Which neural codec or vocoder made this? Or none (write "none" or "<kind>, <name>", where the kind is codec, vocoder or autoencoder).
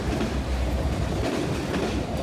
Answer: vocoder, BigVGAN v2